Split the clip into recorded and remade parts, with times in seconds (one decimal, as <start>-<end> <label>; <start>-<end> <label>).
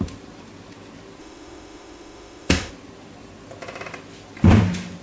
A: 0.0-1.2 recorded; 1.2-2.7 remade; 2.7-5.0 recorded